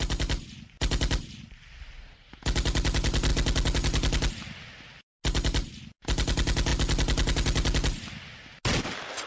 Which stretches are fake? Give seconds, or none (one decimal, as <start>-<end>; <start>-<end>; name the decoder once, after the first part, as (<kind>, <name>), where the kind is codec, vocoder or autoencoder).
none